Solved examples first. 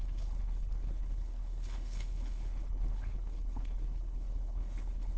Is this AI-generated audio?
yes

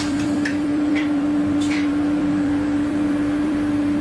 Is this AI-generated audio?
yes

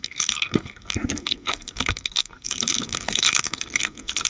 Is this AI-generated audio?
yes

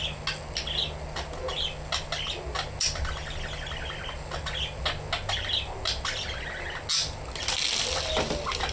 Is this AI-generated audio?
no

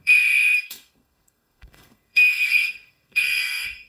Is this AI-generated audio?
yes